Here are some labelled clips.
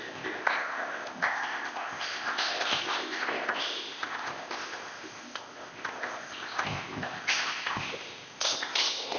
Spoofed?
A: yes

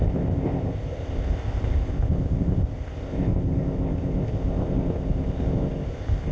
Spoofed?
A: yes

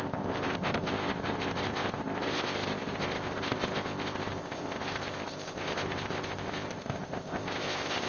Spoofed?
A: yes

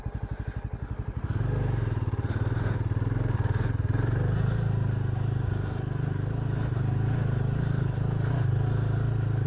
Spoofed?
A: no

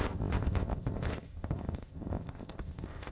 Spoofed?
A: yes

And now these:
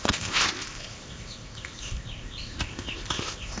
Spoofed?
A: yes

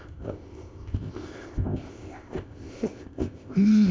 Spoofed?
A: yes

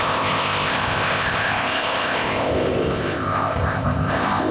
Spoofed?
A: yes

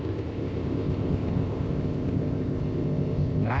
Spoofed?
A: yes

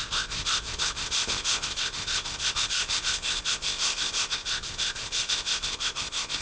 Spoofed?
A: yes